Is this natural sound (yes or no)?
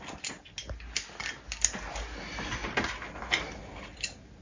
yes